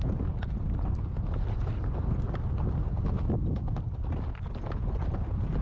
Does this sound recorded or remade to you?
recorded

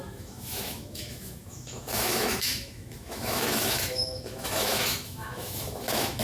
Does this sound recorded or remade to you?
remade